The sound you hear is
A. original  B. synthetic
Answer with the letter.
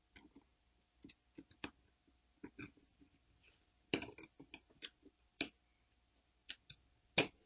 A